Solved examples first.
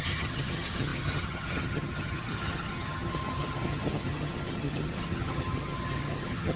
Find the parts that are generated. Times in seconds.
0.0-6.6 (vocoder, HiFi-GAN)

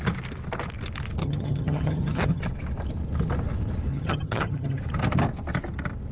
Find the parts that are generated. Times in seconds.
1.2-2.4 (vocoder, HiFi-GAN); 3.9-4.8

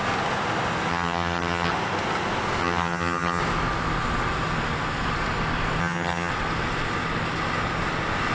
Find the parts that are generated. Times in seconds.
0.9-1.7 (vocoder, HiFi-GAN); 2.6-3.4; 5.8-6.3

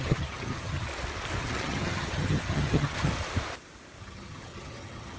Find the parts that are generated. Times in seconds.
0.0-0.9 (vocoder, HiFi-GAN); 1.4-3.1; 4.0-5.2

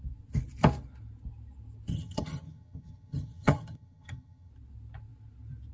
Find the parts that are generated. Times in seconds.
1.9-4.5 (vocoder, HiFi-GAN)

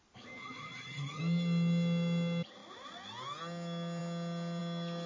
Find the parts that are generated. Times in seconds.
0.4-1.2 (vocoder, HiFi-GAN)

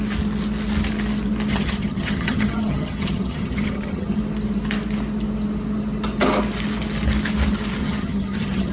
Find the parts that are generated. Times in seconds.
1.5-4.2 (vocoder, HiFi-GAN); 7.8-8.7